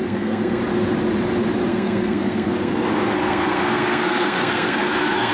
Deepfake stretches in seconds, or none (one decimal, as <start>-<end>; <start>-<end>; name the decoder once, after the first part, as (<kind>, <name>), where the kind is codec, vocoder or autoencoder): 0.0-0.6 (codec, SNAC); 1.7-5.3